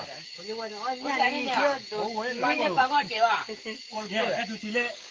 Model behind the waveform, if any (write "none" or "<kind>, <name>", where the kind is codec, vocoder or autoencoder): codec, DAC